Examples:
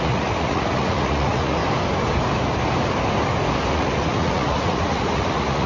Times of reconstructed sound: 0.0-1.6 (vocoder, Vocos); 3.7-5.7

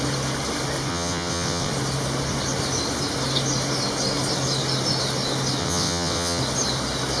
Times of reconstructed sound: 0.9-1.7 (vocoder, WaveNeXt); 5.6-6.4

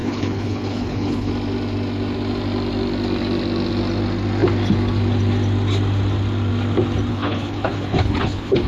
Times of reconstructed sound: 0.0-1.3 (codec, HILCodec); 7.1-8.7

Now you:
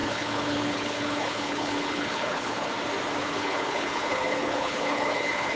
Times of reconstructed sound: 0.0-2.7 (codec, HILCodec); 3.2-5.6

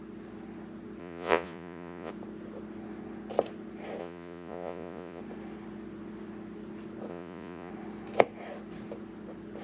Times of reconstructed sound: 1.0-2.1 (vocoder, Vocos); 4.0-5.2; 7.1-7.7

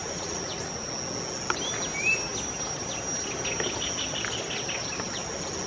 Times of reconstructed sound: 0.0-0.9 (vocoder, Vocos)

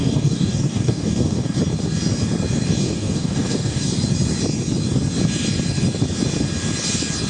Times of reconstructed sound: 0.0-1.6 (codec, DAC); 2.8-3.8